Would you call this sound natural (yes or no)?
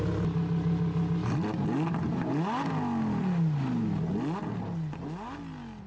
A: yes